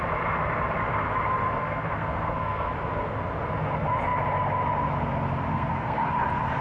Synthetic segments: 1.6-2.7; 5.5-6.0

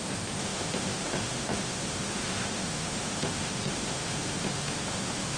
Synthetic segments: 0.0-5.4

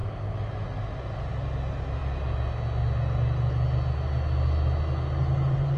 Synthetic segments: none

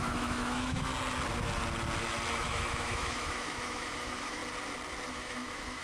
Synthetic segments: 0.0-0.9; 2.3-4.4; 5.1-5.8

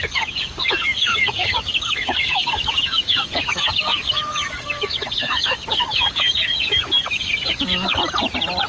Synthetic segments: 0.0-8.0